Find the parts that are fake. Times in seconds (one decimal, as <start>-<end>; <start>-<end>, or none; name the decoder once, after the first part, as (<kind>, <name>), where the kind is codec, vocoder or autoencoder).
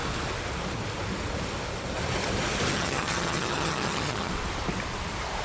2.7-4.3 (vocoder, HiFi-GAN)